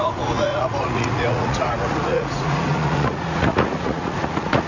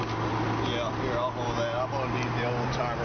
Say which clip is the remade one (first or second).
first